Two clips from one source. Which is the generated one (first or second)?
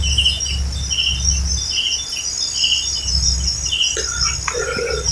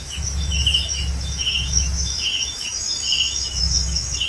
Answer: second